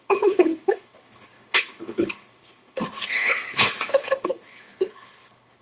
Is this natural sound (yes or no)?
no